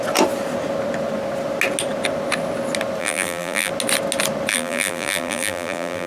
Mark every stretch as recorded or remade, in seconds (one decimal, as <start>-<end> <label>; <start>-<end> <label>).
0.0-3.0 recorded; 3.0-3.7 remade; 3.7-4.5 recorded; 4.5-6.1 remade